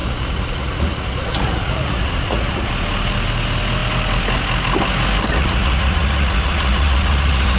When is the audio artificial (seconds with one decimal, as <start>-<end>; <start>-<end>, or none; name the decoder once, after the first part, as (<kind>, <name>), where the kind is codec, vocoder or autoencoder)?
0.0-2.7 (vocoder, Vocos); 5.3-7.6